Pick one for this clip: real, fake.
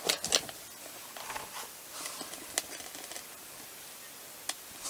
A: real